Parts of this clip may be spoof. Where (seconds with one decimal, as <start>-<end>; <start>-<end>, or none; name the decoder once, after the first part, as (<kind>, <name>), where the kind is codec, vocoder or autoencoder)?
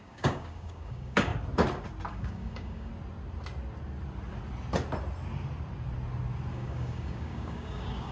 0.0-1.3 (codec, DAC); 2.1-2.9; 6.5-8.1